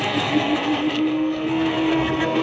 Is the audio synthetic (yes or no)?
yes